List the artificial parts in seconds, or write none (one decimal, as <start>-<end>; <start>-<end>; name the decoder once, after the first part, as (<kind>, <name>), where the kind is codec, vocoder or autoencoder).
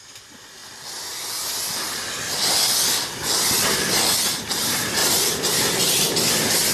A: none